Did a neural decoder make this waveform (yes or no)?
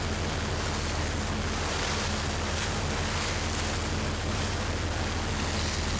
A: no